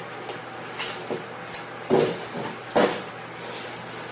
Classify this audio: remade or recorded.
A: recorded